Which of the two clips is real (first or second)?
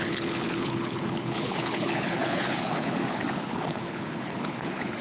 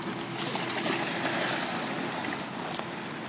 second